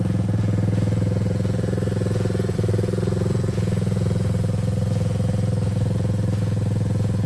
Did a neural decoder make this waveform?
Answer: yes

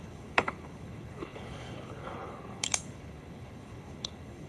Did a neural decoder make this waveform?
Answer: yes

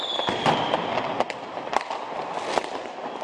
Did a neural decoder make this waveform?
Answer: no